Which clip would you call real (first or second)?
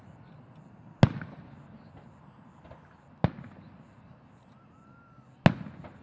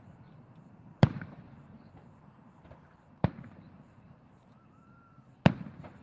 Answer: first